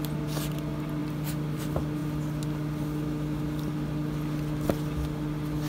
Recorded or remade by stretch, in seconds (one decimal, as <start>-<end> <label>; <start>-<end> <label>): 0.0-5.7 recorded